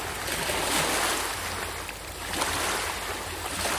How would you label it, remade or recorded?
recorded